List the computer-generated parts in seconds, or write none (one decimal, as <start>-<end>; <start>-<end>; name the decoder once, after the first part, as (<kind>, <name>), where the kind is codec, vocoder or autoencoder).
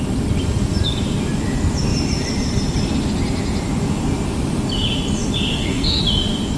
5.5-6.0 (codec, SNAC)